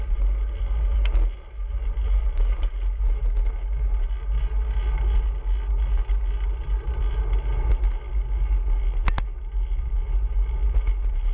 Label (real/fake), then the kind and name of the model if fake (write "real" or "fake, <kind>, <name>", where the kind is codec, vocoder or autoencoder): real